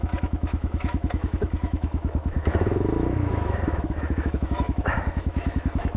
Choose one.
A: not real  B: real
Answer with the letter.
A